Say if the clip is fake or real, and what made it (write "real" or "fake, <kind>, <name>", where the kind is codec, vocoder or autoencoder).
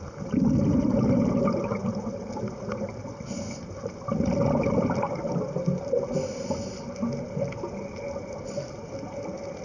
real